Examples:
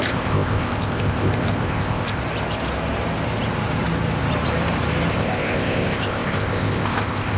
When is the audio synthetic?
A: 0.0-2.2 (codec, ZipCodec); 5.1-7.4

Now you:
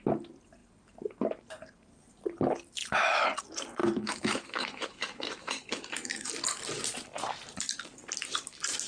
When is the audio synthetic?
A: 3.8-6.3 (autoencoder, DAC-VAE)